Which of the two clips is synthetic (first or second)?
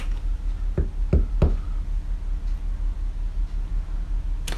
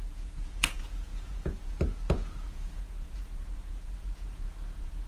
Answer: second